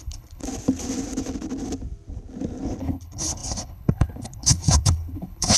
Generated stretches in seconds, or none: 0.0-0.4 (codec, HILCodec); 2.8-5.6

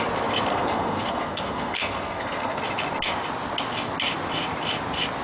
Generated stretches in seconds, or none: 0.5-2.6 (codec, SNAC)

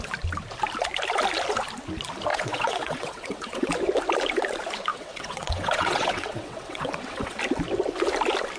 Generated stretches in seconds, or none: 2.3-3.7 (vocoder, WaveNeXt); 4.9-7.4

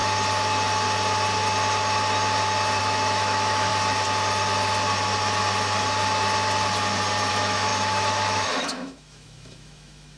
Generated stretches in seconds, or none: 2.8-3.7 (autoencoder, DAC-VAE); 7.3-10.2

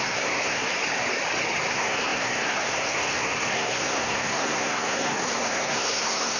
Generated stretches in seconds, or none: 0.0-0.7 (codec, SNAC); 1.7-6.4

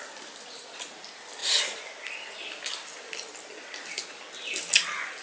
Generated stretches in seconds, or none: none

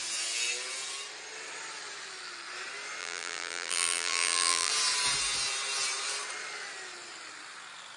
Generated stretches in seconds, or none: 3.0-4.7 (vocoder, BigVGAN v2)